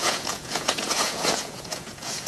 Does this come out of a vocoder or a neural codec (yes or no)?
yes